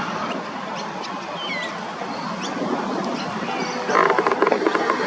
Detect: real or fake real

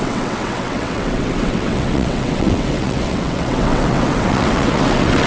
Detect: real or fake fake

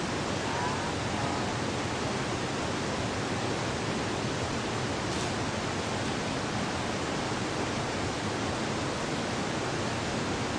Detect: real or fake real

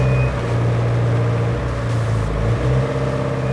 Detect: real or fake real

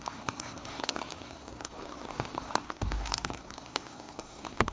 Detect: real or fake fake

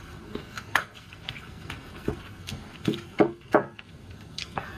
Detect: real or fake fake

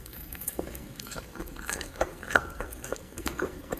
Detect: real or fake fake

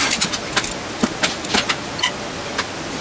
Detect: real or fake real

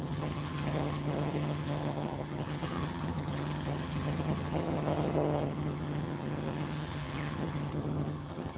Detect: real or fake fake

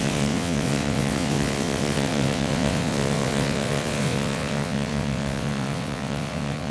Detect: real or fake fake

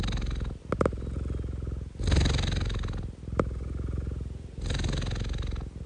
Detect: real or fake real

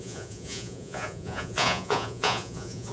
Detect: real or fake fake